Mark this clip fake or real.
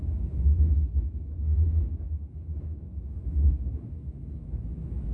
fake